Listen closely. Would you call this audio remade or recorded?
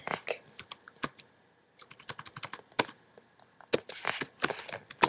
recorded